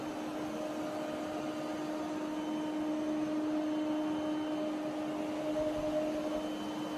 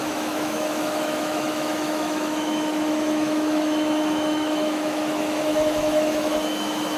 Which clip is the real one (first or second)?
first